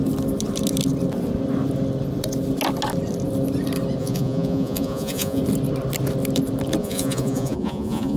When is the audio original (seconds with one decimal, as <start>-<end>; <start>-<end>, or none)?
0.0-4.0; 5.4-6.8